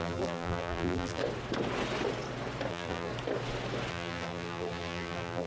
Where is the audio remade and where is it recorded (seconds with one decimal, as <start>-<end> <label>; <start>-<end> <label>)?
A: 0.0-1.2 remade; 1.2-2.7 recorded; 2.7-3.1 remade; 3.1-3.9 recorded; 3.9-5.5 remade